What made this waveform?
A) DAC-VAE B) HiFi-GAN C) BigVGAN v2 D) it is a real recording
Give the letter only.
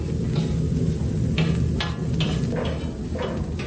D